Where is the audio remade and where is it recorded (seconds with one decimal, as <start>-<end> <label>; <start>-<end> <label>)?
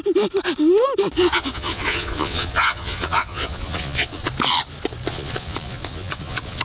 0.0-1.2 recorded; 1.2-4.3 remade; 4.3-5.1 recorded; 5.1-6.6 remade